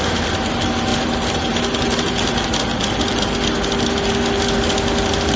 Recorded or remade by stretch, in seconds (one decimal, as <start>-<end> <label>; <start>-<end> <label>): 0.0-5.4 recorded